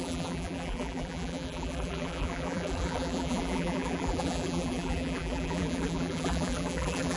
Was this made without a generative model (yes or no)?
no